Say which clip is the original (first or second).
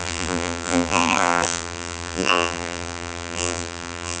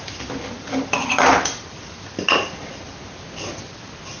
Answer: second